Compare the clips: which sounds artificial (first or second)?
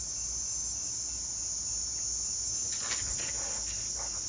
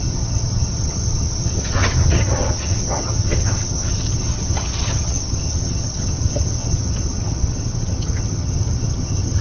second